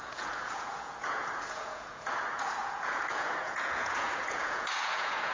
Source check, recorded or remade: remade